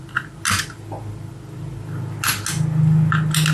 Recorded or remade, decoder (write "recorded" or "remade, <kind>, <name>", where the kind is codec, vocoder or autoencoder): recorded